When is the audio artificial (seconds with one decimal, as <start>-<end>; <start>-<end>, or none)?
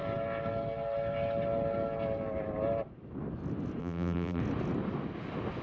3.8-4.4